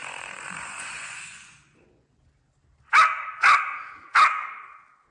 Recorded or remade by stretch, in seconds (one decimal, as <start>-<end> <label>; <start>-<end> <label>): 0.0-2.2 remade; 2.2-5.1 recorded